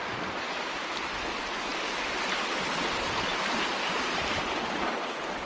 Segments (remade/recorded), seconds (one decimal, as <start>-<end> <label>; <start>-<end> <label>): 0.0-1.2 remade; 1.2-1.7 recorded; 1.7-2.6 remade; 2.6-3.3 recorded; 3.3-4.3 remade; 4.3-5.5 recorded